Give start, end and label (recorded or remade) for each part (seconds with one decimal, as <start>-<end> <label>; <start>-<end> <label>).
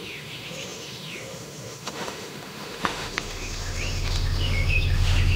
0.0-5.4 remade